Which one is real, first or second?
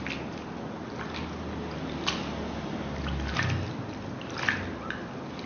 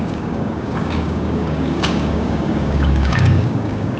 first